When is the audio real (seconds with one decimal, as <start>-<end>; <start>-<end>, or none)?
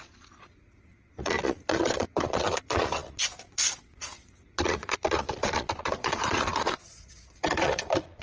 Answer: none